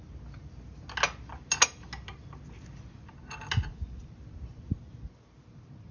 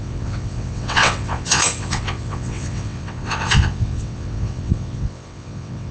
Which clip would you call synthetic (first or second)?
second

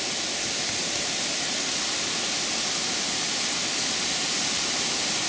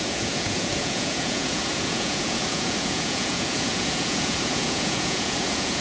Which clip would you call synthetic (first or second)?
second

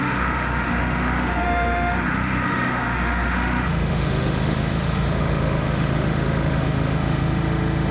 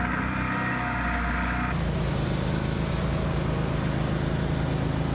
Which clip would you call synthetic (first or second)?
first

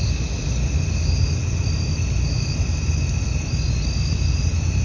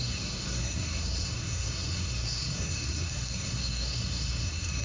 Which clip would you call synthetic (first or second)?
second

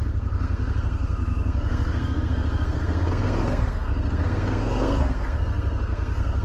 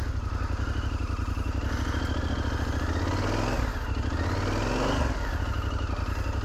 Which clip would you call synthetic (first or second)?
first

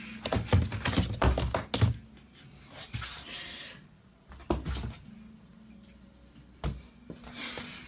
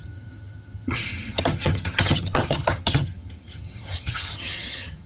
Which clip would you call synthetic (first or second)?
second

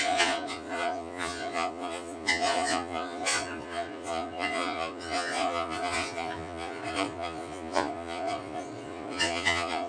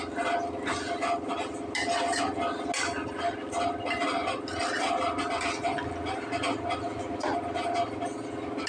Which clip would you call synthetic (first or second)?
first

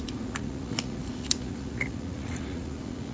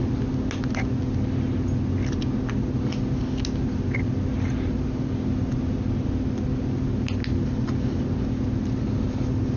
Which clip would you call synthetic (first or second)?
first